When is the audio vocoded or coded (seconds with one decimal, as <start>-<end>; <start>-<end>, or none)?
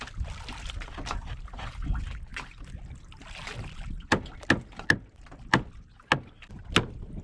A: none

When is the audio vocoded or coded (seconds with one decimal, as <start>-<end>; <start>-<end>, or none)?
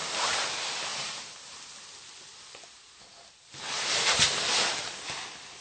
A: none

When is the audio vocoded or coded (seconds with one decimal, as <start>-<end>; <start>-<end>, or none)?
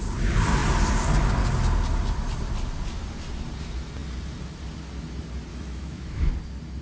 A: 5.5-6.3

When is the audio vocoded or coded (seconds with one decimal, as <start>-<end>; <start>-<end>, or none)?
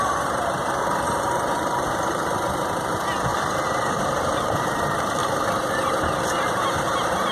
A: 0.0-3.3; 3.9-7.3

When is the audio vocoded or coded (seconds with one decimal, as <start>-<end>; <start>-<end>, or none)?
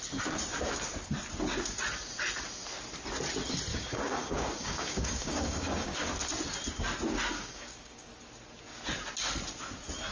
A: 3.7-6.1; 7.3-8.1